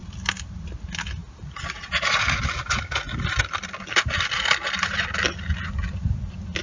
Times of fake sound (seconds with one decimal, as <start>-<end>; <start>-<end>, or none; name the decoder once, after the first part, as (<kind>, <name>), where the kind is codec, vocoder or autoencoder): none